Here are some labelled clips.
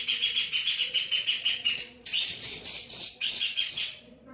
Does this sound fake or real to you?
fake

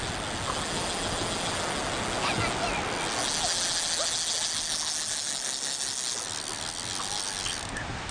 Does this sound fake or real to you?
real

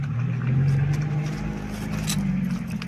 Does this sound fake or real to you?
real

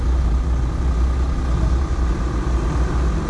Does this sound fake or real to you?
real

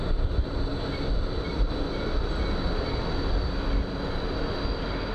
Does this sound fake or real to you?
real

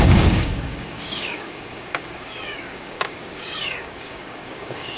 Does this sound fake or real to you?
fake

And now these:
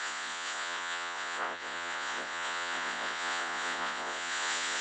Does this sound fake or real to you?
fake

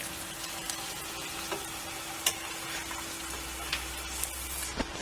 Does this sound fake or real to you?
real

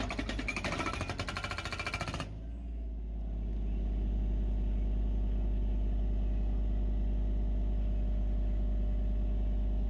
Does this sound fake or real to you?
real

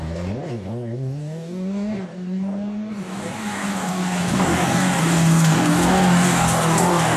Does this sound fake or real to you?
fake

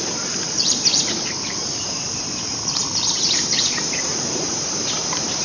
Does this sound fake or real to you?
fake